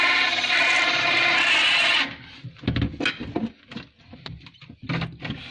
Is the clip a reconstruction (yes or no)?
no